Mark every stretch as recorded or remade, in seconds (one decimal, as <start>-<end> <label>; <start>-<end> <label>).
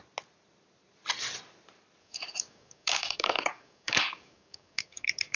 0.0-2.0 recorded; 2.0-5.4 remade